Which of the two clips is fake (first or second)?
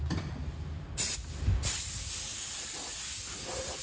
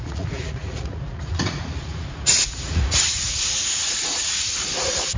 second